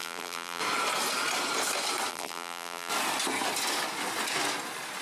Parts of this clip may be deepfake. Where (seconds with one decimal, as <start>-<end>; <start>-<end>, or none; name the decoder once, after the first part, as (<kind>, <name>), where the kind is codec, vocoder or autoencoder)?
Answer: 0.0-0.6 (vocoder, BigVGAN v2); 2.1-2.9